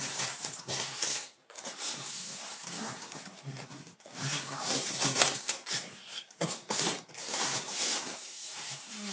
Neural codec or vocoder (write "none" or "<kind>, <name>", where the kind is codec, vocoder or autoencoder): codec, SNAC